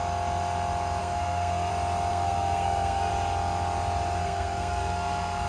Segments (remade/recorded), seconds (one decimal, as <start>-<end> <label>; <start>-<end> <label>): 0.0-1.0 recorded; 1.0-1.7 remade; 1.7-2.1 recorded; 2.1-3.1 remade; 3.1-4.2 recorded; 4.2-5.5 remade